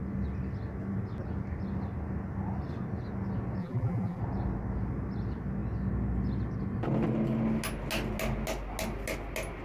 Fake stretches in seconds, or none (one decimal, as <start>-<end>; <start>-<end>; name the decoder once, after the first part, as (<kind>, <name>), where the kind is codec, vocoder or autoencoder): 3.6-4.2 (vocoder, BigVGAN v2)